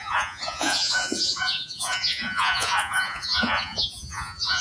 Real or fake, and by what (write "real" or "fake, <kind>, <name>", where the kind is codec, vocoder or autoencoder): fake, vocoder, Vocos